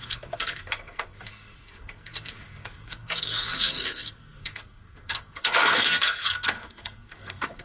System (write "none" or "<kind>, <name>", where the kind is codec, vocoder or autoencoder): codec, SNAC